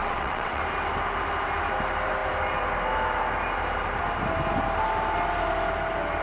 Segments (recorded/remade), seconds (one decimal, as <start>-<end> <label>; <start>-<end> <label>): 0.0-0.6 remade; 0.6-6.2 recorded